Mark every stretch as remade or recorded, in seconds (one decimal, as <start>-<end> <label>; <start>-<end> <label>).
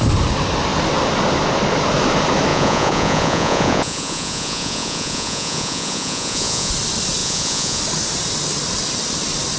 0.0-2.5 recorded; 2.5-6.7 remade; 6.7-7.2 recorded; 7.2-7.8 remade; 7.8-9.6 recorded